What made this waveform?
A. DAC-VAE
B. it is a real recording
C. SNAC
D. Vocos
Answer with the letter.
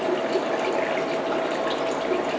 B